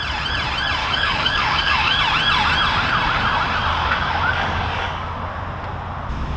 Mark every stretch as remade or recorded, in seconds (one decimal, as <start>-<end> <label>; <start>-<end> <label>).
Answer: 0.0-0.8 recorded; 0.8-2.0 remade; 2.0-3.7 recorded; 3.7-5.3 remade; 5.3-6.4 recorded